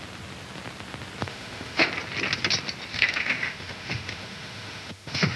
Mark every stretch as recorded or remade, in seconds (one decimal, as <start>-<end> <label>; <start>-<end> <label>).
0.0-1.2 recorded; 1.2-1.9 remade; 1.9-2.9 recorded; 2.9-5.4 remade